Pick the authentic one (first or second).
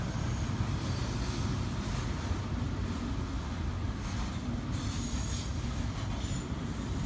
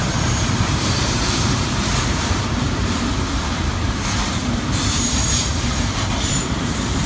first